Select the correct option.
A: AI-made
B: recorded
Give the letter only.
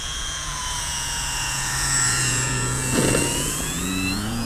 A